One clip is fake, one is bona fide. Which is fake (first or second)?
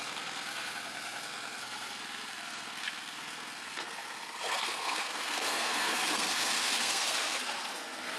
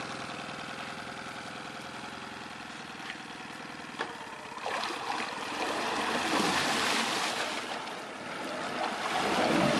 first